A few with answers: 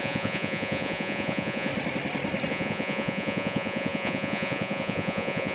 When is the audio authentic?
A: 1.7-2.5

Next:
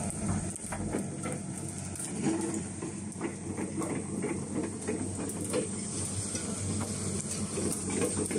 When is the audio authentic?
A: 0.0-8.4

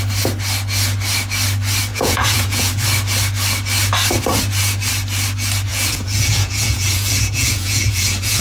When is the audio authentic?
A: 0.0-1.9; 2.7-5.7

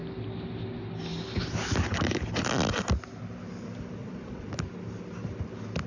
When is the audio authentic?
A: 0.0-4.0; 4.5-5.9

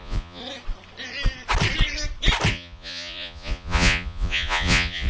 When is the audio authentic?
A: 0.4-2.5